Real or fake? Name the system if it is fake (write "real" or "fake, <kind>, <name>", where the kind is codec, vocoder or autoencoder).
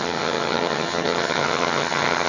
fake, vocoder, HiFi-GAN